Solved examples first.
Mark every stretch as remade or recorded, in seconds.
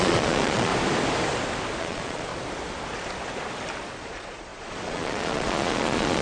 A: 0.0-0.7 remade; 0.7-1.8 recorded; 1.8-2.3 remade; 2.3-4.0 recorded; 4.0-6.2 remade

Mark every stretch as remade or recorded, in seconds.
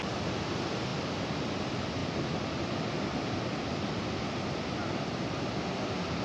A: 0.0-6.2 recorded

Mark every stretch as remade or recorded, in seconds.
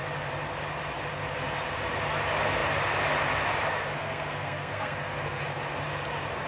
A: 0.0-3.7 recorded; 3.7-5.6 remade; 5.6-6.5 recorded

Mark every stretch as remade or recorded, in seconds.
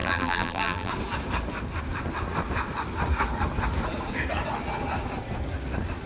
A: 0.0-0.9 remade; 0.9-6.1 recorded